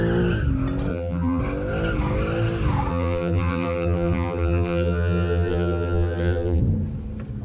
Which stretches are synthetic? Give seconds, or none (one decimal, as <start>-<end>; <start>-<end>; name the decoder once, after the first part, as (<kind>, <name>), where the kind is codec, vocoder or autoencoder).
0.9-1.4 (vocoder, BigVGAN v2); 2.9-6.6